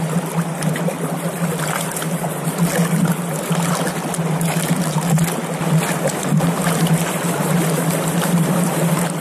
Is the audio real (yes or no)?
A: yes